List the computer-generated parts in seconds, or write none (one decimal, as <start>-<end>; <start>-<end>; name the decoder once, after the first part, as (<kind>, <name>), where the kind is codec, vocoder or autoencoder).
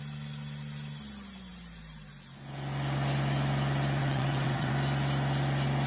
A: 4.0-4.7 (vocoder, WaveNeXt)